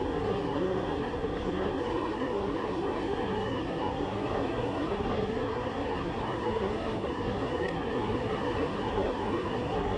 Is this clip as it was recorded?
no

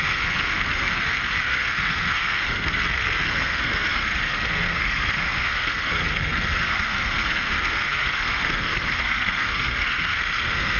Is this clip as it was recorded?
no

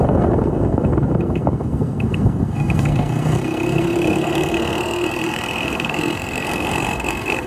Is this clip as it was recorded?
no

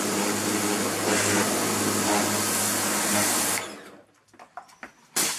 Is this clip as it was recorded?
yes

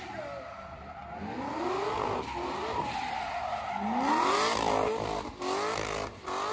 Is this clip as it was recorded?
yes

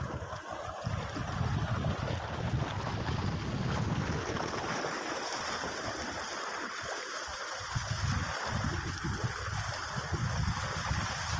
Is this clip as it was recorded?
yes